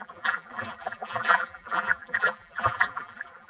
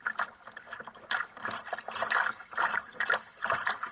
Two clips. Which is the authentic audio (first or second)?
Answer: second